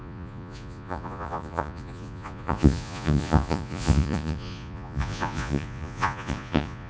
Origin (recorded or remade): remade